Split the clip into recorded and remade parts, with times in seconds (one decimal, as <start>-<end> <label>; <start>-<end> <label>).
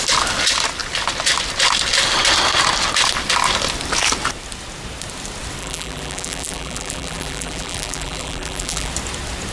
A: 0.0-5.6 recorded; 5.6-8.9 remade; 8.9-9.5 recorded